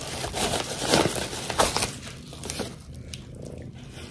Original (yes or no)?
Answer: yes